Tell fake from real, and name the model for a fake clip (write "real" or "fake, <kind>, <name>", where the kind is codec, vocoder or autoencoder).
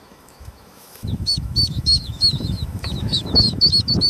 fake, autoencoder, DAC-VAE